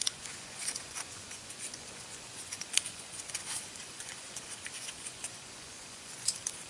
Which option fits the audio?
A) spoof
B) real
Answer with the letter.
A